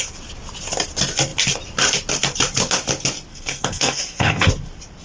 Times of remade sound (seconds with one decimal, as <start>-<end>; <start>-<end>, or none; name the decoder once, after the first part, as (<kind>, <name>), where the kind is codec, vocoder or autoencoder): 3.3-4.5 (codec, SNAC)